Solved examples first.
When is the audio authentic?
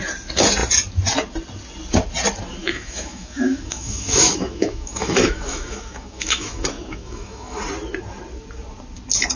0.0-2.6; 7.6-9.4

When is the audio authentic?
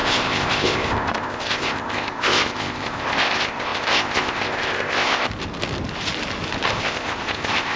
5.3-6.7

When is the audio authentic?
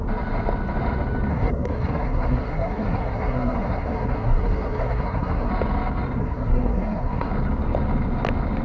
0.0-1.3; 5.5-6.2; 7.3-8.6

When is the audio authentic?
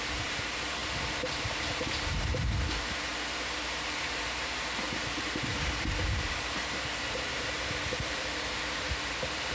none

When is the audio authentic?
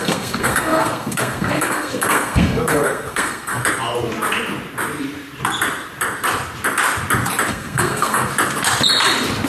3.6-7.5; 8.3-9.5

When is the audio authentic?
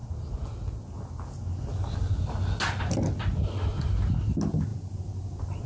0.0-5.7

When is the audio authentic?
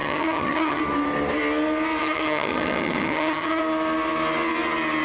0.8-2.0; 3.6-5.0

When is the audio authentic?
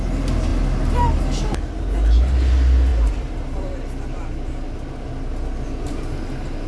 0.0-6.7